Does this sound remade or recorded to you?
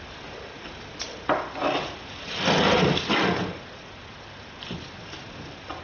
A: recorded